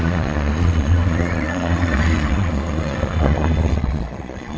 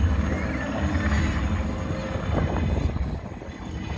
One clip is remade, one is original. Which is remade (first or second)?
first